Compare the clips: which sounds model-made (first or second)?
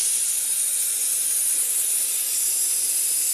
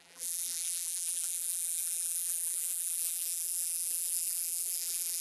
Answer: second